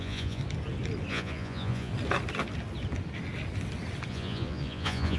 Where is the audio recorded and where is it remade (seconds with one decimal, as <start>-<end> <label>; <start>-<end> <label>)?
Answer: 0.0-0.4 remade; 0.4-1.1 recorded; 1.1-1.9 remade; 1.9-4.1 recorded; 4.1-5.2 remade